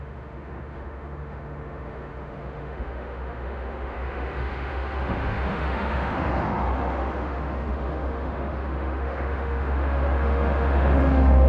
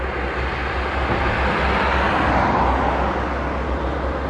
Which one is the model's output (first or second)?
first